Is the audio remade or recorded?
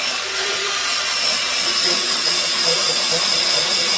remade